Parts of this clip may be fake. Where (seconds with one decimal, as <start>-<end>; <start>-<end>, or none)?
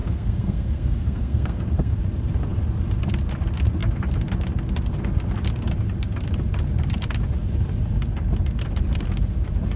0.0-2.0